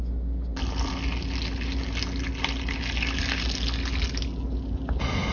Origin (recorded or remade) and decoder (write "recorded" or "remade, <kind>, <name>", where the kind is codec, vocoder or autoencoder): recorded